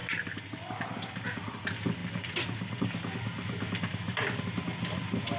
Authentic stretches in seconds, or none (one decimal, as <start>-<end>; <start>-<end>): 0.0-5.4